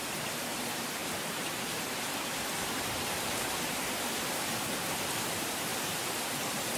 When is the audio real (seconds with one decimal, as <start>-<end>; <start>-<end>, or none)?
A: none